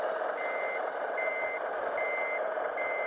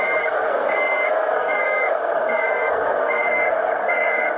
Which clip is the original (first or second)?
first